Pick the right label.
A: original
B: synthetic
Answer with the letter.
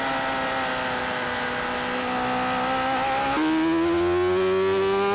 A